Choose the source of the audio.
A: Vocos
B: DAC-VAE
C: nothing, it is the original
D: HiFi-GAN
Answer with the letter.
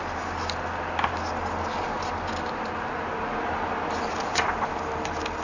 C